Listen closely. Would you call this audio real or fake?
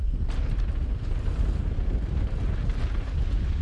real